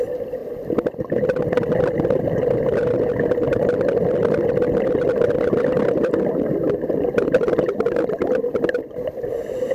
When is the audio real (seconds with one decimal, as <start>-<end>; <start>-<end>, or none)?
0.4-1.6; 6.6-9.2